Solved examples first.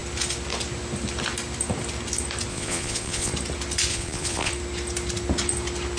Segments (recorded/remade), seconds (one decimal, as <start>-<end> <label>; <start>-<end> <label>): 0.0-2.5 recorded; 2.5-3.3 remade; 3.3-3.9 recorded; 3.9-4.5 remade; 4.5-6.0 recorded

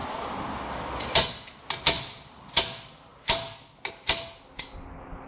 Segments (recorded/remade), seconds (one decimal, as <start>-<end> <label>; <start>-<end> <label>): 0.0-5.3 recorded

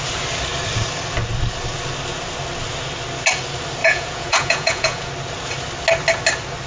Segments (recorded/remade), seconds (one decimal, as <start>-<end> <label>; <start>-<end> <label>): 0.0-3.8 recorded; 3.8-5.1 remade; 5.1-6.7 recorded

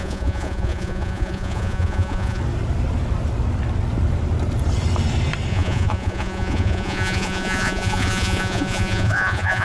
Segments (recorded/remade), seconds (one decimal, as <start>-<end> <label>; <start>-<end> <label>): 0.0-2.4 remade; 2.4-5.5 recorded; 5.5-9.6 remade

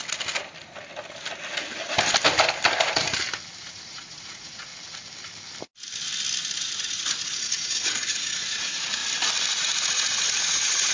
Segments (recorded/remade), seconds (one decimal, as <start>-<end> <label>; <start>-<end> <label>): 0.0-3.6 recorded; 3.6-4.7 remade; 4.7-6.6 recorded; 6.6-9.0 remade; 9.0-9.6 recorded; 9.6-10.9 remade